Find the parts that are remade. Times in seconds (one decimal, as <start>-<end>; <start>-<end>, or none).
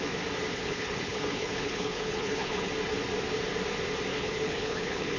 0.5-2.7; 4.1-5.2